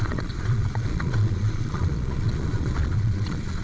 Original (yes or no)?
no